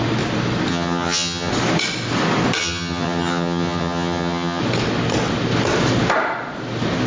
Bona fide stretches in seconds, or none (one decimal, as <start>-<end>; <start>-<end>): 0.0-0.7; 1.5-2.6; 4.6-7.1